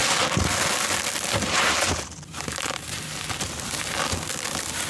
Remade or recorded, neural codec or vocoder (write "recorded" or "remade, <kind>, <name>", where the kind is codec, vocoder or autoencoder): recorded